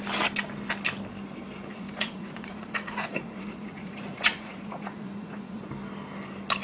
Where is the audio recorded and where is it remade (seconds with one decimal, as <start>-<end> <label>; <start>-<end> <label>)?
0.0-1.7 recorded; 1.7-5.7 remade; 5.7-6.6 recorded